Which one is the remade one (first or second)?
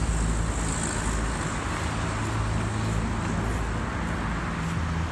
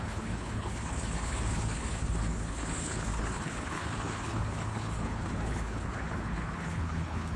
second